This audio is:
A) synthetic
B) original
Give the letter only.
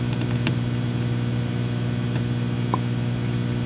B